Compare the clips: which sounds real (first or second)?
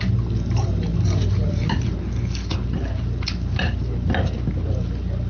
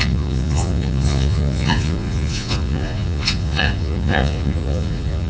first